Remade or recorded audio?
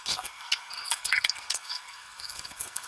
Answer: remade